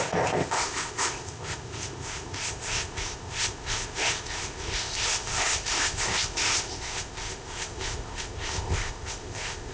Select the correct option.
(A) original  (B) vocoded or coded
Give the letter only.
B